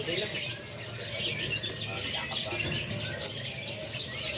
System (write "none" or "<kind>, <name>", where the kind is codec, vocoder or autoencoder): none